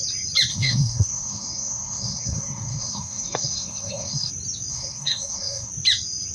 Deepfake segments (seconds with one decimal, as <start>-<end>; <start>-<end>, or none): 0.5-4.3; 4.7-5.7

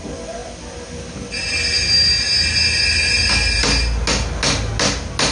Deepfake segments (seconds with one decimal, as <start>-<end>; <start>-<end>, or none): none

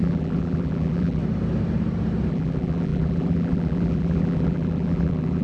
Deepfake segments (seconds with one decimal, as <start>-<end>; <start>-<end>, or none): 0.0-1.2; 2.3-5.4

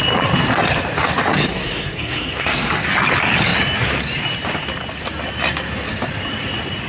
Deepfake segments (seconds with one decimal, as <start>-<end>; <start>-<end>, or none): 1.5-2.7

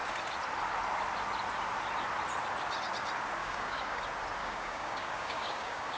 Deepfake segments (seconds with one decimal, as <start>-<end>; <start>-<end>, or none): 3.4-4.0; 4.4-6.0